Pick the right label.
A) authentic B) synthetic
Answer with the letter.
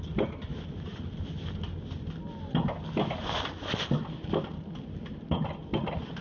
A